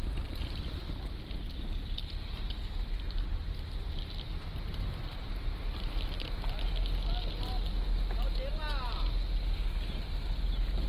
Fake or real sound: real